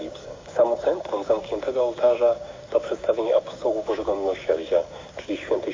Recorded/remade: remade